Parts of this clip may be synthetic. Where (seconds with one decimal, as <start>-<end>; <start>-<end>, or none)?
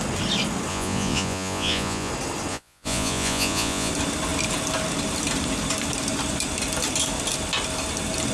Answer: 0.7-2.1; 2.5-3.9